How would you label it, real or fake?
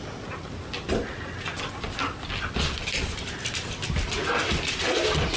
real